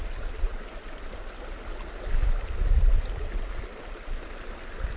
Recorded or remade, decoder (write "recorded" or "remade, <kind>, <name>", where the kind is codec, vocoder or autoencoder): recorded